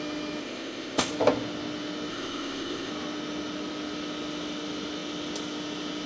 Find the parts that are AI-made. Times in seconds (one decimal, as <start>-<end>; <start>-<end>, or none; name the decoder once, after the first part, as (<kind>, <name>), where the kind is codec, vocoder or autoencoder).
0.4-1.1 (codec, ZipCodec); 2.1-2.9